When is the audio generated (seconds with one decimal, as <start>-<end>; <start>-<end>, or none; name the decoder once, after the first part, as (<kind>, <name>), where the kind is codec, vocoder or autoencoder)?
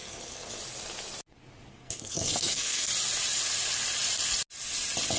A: 0.0-0.6 (codec, SNAC); 1.7-2.9